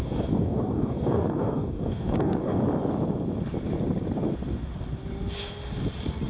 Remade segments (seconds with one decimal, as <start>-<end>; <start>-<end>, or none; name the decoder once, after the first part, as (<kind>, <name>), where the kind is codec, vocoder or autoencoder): 0.0-2.6 (codec, DAC)